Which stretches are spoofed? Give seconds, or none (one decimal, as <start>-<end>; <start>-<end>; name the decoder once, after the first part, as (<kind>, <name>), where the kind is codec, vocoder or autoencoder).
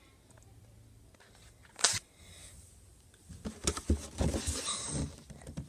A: none